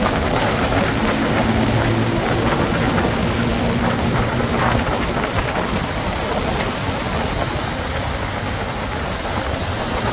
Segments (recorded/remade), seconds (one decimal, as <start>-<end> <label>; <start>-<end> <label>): 0.0-3.5 recorded; 3.5-6.1 remade; 6.1-10.1 recorded